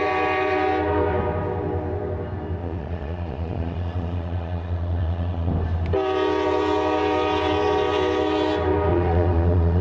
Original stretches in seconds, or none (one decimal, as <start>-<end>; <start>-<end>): 0.0-2.6; 5.5-8.9